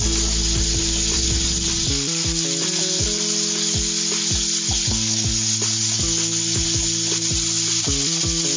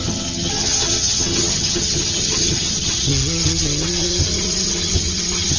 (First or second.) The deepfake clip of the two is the second